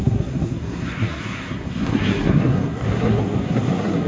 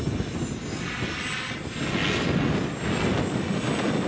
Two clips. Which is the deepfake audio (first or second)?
first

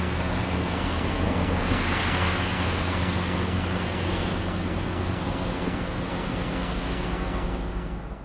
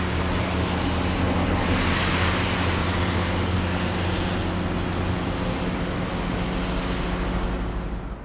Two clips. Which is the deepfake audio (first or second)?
first